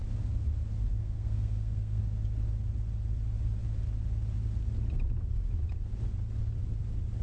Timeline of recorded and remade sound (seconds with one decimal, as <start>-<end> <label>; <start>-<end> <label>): 0.0-1.0 recorded; 1.0-2.0 remade; 2.0-7.2 recorded